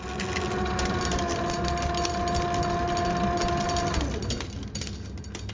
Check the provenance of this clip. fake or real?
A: real